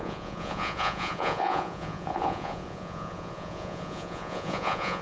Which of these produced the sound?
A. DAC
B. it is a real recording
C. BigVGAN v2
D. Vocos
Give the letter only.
D